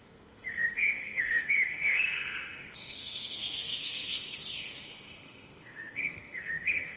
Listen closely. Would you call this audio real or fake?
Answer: fake